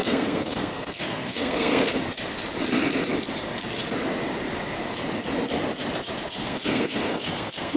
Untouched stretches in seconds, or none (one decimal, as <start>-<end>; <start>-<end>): 1.9-6.4